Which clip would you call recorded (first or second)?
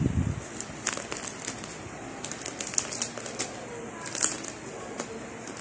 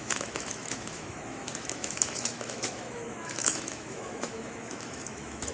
first